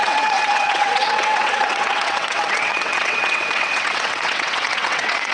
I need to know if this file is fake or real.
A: fake